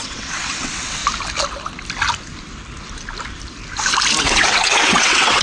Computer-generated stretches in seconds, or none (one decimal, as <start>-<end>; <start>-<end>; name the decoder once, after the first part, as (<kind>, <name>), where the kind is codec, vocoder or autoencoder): 0.0-1.0 (vocoder, WaveNeXt); 4.2-5.4